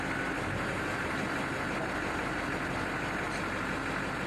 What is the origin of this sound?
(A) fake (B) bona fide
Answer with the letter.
B